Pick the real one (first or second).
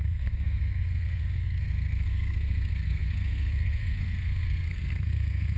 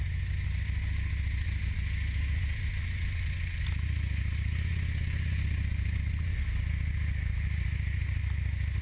second